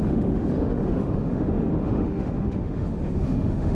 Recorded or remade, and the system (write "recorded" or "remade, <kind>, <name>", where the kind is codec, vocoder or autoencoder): remade, autoencoder, DAC-VAE